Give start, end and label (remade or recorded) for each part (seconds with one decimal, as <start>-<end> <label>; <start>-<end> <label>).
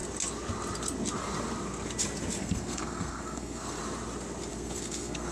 0.0-2.4 recorded; 2.4-3.8 remade; 3.8-4.5 recorded; 4.5-5.3 remade